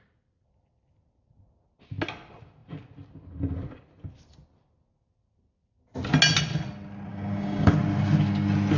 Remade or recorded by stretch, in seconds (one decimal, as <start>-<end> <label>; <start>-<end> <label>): 0.0-7.1 recorded; 7.1-7.7 remade; 7.7-8.8 recorded